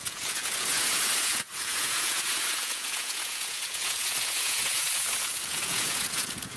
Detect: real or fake fake